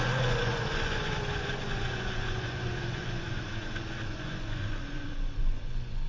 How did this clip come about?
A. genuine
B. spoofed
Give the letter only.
B